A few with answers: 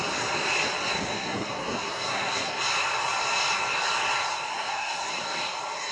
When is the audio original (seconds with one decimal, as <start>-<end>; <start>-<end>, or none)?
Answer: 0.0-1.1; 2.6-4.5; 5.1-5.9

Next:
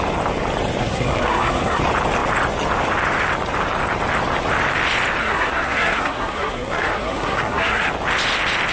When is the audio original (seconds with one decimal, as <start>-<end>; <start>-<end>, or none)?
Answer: 0.0-0.8; 1.8-5.2; 7.9-8.7

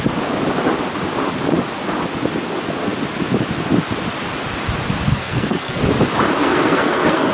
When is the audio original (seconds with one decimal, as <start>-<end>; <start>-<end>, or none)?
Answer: 0.0-5.1; 5.8-6.4

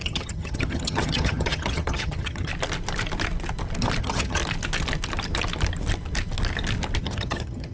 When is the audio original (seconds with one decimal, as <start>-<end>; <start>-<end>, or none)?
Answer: 2.5-4.0; 4.4-7.0

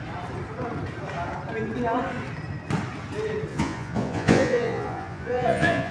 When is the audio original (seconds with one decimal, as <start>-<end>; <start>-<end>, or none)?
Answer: 0.0-3.5